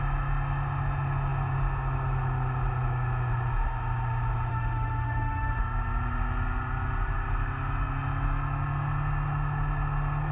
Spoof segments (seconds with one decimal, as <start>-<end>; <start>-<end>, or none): 4.5-5.6